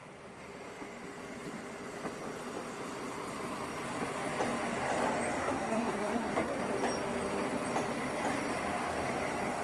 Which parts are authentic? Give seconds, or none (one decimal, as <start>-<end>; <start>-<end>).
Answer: 0.0-5.4; 6.6-9.6